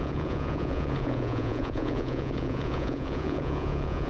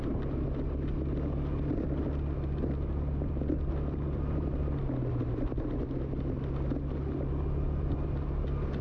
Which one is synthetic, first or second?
first